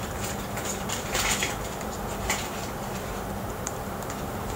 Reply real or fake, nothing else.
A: fake